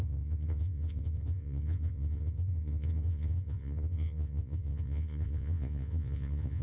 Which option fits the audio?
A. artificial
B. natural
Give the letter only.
A